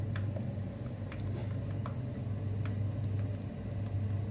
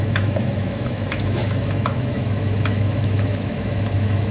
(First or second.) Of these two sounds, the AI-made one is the second